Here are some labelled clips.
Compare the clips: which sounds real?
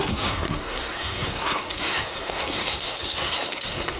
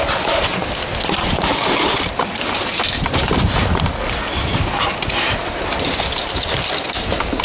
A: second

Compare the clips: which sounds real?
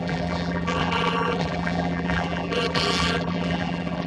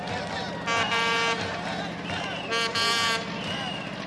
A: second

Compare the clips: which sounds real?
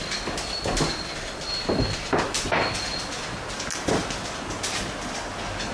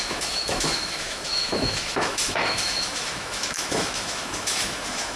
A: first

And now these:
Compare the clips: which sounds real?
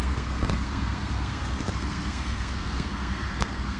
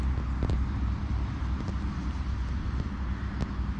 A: second